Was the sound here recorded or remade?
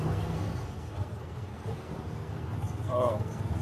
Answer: remade